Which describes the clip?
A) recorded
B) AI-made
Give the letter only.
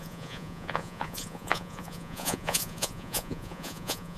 B